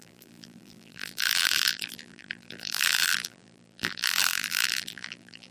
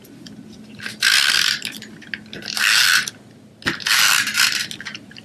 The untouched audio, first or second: second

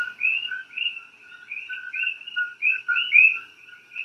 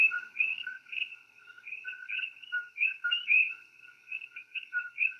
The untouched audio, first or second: first